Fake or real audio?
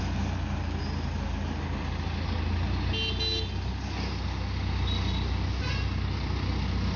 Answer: real